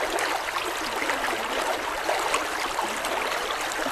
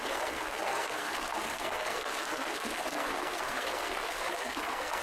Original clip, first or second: first